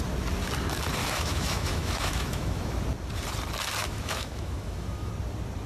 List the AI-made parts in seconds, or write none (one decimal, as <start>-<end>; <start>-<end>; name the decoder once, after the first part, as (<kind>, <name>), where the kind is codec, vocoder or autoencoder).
1.0-2.8 (autoencoder, DAC-VAE); 3.8-5.1